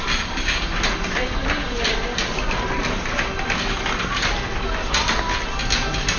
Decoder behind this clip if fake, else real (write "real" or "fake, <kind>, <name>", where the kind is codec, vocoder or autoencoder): real